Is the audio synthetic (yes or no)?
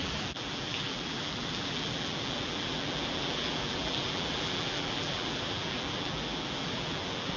yes